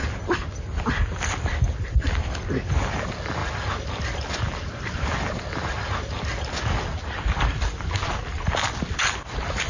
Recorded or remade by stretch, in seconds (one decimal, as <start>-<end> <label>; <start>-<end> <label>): 0.0-9.7 recorded